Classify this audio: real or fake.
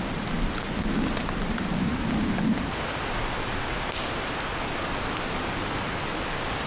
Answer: real